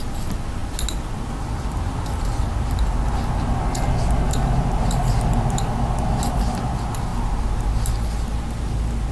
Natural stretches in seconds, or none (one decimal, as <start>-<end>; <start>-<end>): 0.0-9.1